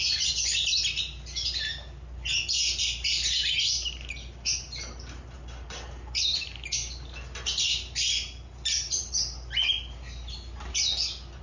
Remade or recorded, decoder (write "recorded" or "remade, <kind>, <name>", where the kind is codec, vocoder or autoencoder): recorded